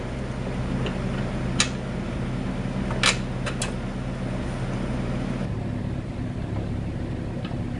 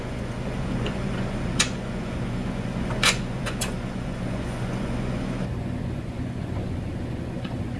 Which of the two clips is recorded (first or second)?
first